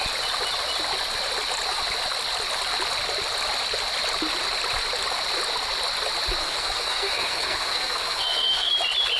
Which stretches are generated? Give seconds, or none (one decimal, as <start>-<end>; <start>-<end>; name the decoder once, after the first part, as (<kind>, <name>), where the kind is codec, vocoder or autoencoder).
6.4-8.7 (codec, SNAC)